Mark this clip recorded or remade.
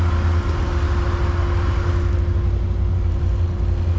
recorded